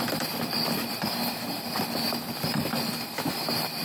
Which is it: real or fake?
fake